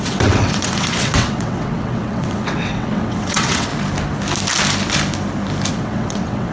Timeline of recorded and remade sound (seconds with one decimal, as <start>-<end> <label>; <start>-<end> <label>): 0.0-3.7 remade; 3.7-5.7 recorded; 5.7-6.5 remade